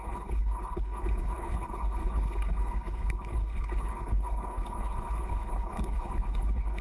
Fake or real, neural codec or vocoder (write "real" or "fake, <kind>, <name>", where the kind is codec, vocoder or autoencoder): fake, codec, HILCodec